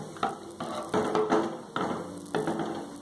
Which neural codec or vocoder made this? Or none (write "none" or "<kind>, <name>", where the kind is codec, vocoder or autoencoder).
none